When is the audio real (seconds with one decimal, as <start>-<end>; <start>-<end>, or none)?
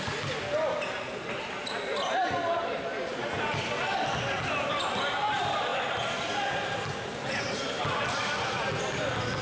0.0-9.4